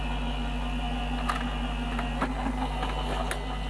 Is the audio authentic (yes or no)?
yes